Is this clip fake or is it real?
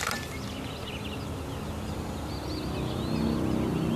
real